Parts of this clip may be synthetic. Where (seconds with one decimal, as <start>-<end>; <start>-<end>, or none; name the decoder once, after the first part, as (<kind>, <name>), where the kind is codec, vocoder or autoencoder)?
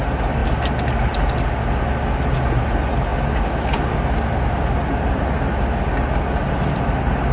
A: none